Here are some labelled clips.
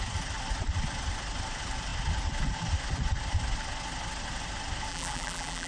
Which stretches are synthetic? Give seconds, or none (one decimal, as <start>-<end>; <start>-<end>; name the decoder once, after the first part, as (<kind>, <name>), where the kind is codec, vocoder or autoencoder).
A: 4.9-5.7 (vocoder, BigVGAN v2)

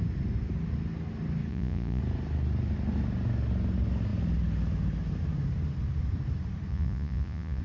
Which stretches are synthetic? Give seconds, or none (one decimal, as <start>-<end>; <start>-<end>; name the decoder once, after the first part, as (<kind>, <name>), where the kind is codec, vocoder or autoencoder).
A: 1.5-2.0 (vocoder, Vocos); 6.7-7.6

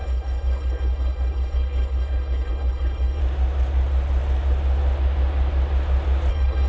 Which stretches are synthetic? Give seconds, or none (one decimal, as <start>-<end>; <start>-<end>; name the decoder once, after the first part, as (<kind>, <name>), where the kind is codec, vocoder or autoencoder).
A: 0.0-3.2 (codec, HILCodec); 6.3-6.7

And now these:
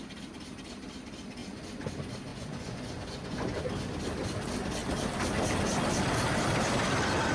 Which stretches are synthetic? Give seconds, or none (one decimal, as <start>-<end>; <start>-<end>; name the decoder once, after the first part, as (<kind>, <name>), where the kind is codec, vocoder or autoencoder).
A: 1.4-1.9 (vocoder, Vocos); 2.3-3.6

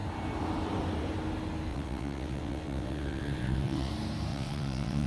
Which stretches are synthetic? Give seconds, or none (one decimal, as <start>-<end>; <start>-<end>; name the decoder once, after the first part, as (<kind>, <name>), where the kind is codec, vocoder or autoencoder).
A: 1.7-3.9 (vocoder, WaveNeXt); 4.3-5.1

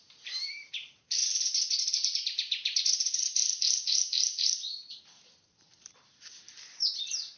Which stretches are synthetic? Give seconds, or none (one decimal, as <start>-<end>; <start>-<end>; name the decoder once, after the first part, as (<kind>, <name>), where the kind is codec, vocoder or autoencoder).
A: 0.0-1.2 (vocoder, BigVGAN v2); 1.9-7.4